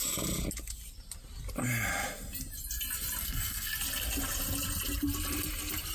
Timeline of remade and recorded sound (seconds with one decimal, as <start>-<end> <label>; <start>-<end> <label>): 0.0-3.2 recorded; 3.2-3.7 remade; 3.7-5.9 recorded